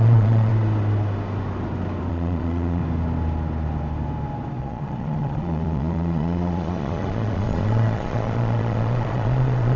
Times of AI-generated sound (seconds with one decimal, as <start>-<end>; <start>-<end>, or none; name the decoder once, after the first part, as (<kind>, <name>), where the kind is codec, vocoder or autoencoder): 0.0-0.5 (vocoder, Vocos); 2.1-2.8; 4.6-9.8